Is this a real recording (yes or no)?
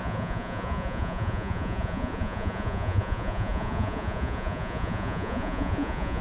no